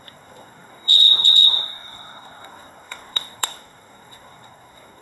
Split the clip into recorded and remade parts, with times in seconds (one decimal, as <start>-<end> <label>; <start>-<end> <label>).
0.0-5.0 remade